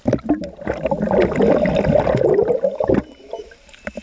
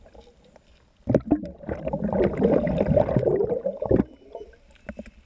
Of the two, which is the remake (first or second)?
second